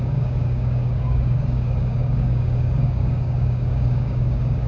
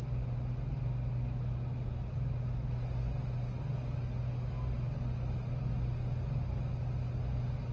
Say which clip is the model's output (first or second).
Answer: first